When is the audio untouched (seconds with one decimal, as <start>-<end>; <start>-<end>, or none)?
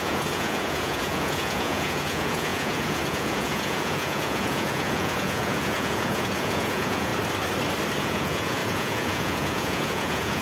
7.1-8.0